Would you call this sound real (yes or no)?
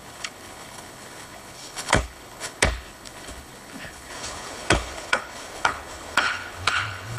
no